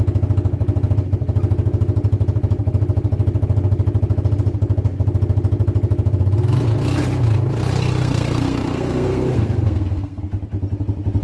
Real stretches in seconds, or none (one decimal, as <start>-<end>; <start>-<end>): 0.0-8.0; 10.2-11.2

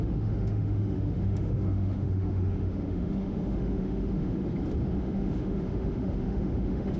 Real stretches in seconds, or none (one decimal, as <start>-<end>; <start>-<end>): 4.4-5.0